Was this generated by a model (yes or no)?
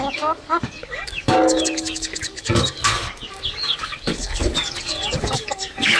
yes